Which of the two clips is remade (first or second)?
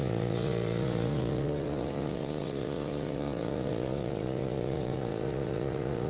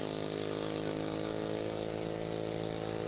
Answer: first